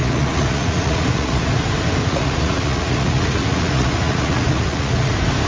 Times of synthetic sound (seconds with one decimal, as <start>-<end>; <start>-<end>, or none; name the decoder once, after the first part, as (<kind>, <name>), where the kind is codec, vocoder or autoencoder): 0.0-1.4 (vocoder, Vocos); 2.0-5.1